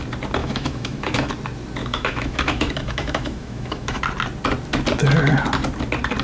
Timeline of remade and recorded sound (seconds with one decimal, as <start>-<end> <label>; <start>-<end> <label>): 0.0-0.4 recorded; 0.4-1.3 remade; 1.3-1.8 recorded; 1.8-4.0 remade; 4.0-6.2 recorded